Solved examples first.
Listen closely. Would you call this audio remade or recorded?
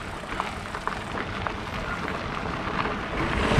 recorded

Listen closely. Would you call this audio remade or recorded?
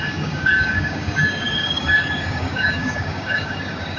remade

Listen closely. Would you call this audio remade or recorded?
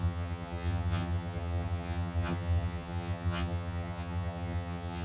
remade